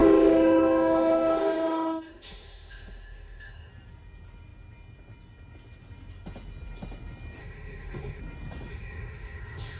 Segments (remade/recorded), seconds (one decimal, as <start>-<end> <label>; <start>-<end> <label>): 0.0-3.7 remade; 3.7-7.4 recorded; 7.4-8.2 remade; 8.2-8.7 recorded; 8.7-9.8 remade

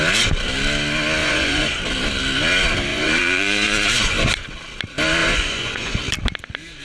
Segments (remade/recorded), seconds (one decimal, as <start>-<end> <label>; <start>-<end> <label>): 0.0-1.2 recorded; 1.2-1.8 remade; 1.8-2.9 recorded; 2.9-4.3 remade; 4.3-5.2 recorded; 5.2-6.0 remade; 6.0-6.8 recorded

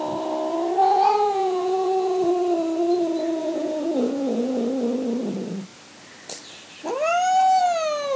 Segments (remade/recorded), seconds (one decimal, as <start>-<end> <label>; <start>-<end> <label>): 0.0-0.8 recorded; 0.8-2.3 remade; 2.3-3.4 recorded; 3.4-4.6 remade; 4.6-8.2 recorded

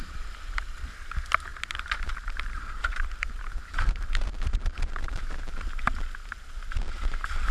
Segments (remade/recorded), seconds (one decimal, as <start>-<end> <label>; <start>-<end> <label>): 0.0-1.5 recorded; 1.5-5.6 remade; 5.6-7.5 recorded

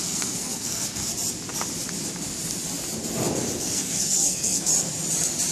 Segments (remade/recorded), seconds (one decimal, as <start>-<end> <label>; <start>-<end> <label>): 0.0-1.1 remade; 1.1-3.6 recorded; 3.6-4.7 remade; 4.7-5.5 recorded

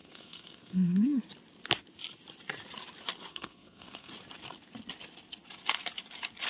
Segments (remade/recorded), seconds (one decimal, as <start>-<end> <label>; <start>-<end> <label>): 0.0-1.2 remade; 1.2-3.3 recorded; 3.3-4.1 remade; 4.1-6.5 recorded